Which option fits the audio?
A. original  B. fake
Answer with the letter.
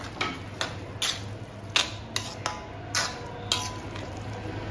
A